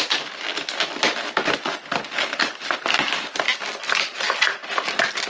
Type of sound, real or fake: real